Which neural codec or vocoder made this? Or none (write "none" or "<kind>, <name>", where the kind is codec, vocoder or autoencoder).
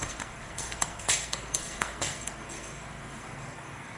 codec, SNAC